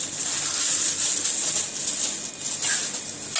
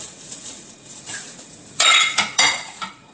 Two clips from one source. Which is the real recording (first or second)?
first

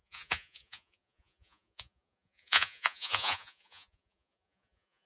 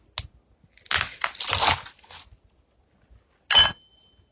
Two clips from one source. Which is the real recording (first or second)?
second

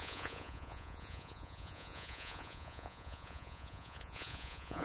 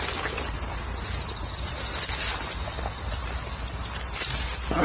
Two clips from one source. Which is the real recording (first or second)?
second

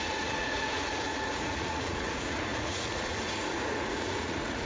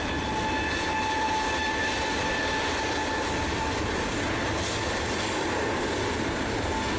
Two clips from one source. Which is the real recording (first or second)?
second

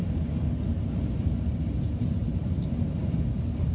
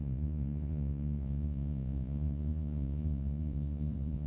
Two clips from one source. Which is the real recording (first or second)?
first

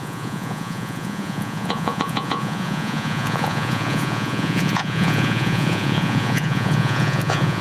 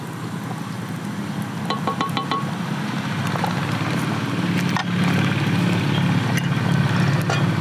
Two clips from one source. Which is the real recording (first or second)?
second